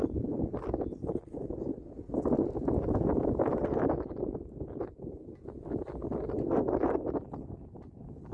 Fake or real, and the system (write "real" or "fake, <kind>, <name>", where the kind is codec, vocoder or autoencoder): real